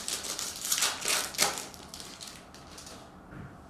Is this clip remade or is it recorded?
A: recorded